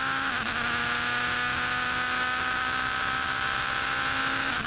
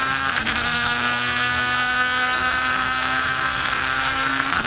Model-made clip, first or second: second